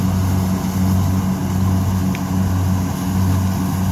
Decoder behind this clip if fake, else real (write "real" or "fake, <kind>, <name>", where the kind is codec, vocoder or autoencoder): real